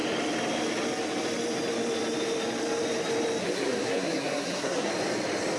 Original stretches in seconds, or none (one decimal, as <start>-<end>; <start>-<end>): 0.0-3.4; 4.9-5.6